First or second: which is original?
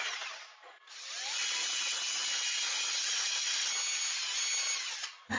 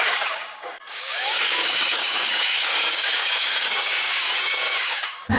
first